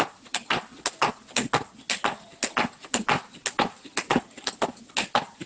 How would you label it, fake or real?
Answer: real